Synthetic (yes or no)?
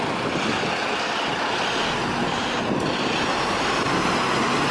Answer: no